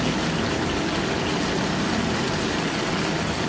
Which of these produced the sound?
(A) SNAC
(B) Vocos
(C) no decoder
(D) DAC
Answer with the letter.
C